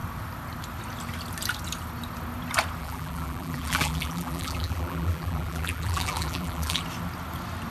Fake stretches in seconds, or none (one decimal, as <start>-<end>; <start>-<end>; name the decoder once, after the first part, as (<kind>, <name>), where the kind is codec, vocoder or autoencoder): 2.8-6.8 (vocoder, BigVGAN v2)